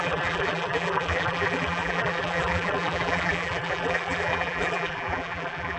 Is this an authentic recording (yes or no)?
no